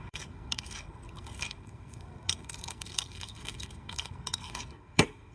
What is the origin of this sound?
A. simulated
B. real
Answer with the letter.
A